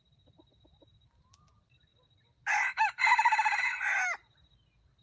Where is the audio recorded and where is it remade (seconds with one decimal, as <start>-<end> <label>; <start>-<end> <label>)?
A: 0.0-5.0 recorded